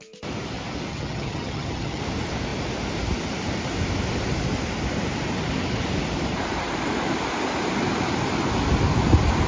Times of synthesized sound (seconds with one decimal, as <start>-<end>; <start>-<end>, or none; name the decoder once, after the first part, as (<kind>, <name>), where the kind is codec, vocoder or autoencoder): 0.9-2.0 (vocoder, HiFi-GAN)